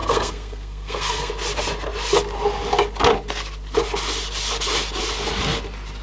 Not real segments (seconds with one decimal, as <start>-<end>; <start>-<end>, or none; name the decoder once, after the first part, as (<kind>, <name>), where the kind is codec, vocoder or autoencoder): 0.0-1.3 (codec, SNAC)